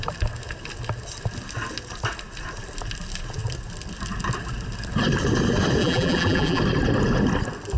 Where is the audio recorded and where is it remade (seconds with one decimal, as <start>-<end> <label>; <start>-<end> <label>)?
0.0-5.8 recorded; 5.8-6.6 remade; 6.6-7.8 recorded